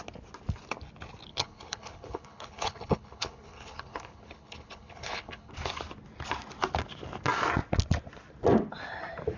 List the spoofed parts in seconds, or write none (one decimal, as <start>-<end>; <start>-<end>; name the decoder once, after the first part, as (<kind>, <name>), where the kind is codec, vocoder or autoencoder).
1.3-5.5 (codec, HILCodec)